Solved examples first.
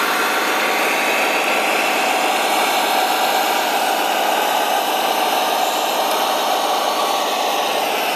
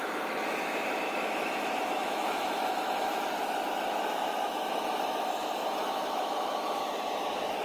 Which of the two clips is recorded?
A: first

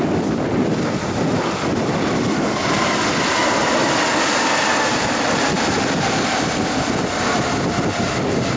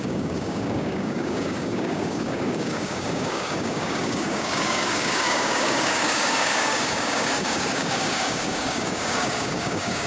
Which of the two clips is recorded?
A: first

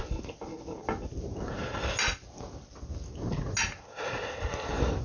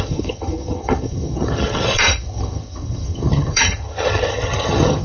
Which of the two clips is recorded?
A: first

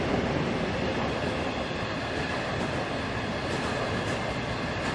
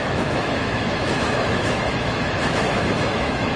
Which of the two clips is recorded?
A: first